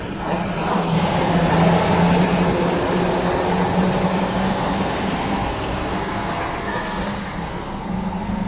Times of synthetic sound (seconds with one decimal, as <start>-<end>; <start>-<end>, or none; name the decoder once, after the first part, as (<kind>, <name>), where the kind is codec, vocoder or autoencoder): 0.7-1.5 (codec, SNAC); 4.1-8.5